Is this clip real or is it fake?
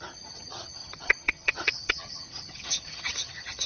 fake